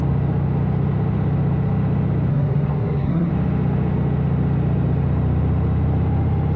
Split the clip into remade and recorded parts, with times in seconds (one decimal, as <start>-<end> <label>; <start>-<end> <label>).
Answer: 0.0-2.3 recorded; 2.3-3.3 remade; 3.3-6.6 recorded